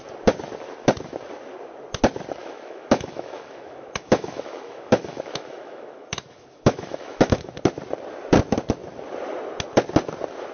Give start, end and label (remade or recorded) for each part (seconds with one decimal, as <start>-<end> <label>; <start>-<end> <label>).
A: 0.0-2.4 recorded; 2.4-7.5 remade; 7.5-10.5 recorded